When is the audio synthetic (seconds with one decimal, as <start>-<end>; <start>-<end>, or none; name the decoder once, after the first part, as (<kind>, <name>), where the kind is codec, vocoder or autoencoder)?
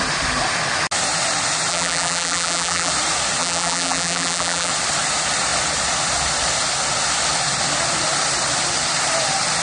1.7-2.9 (vocoder, BigVGAN v2); 3.4-4.7